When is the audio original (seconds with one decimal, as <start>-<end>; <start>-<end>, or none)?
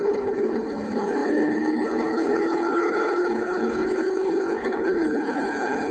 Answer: none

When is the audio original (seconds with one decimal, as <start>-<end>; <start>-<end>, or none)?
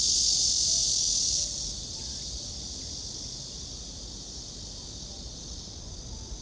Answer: 0.0-6.4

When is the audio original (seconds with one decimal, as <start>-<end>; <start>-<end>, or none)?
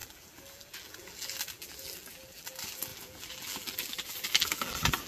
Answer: none